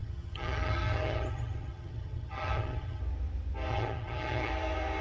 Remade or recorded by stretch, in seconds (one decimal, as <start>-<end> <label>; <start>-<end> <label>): 0.0-3.0 remade; 3.0-3.7 recorded; 3.7-4.5 remade; 4.5-5.0 recorded